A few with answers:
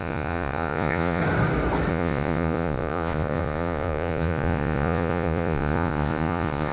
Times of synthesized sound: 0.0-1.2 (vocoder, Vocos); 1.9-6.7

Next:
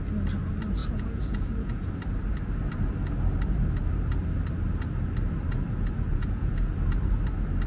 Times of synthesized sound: 0.8-1.9 (vocoder, Vocos); 6.1-6.7